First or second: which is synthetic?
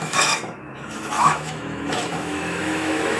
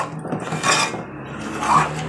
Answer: first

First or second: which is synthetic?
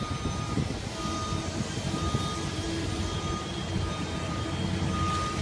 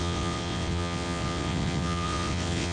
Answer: second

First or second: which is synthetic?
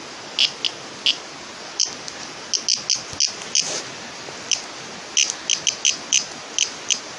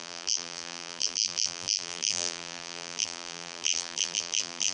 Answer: second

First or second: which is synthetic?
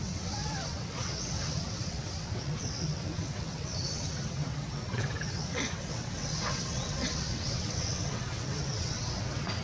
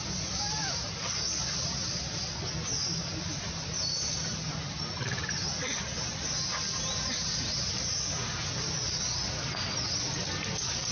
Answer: first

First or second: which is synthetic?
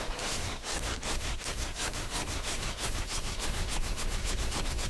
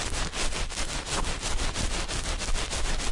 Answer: first